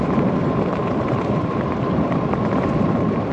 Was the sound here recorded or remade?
remade